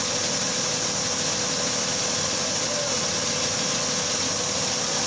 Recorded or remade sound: recorded